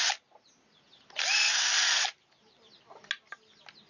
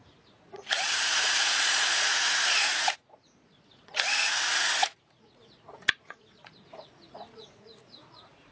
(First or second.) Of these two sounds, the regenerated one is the second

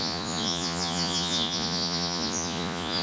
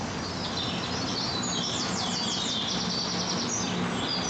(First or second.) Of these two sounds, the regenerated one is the first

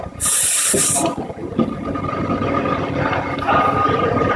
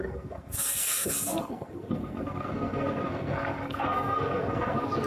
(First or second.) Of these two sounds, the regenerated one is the second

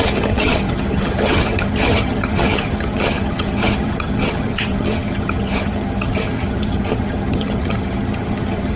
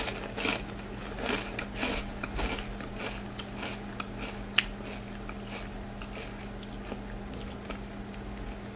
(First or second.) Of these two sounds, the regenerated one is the first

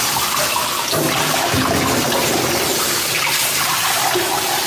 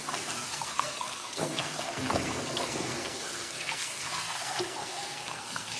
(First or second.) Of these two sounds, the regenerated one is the second